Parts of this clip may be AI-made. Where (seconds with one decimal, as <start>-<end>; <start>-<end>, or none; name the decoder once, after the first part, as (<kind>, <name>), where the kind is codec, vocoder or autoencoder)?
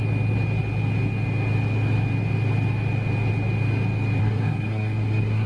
4.2-5.5 (codec, SNAC)